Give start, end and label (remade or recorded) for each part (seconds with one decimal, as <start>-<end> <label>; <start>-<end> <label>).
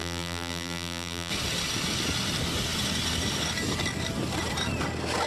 0.0-1.3 remade; 1.3-5.3 recorded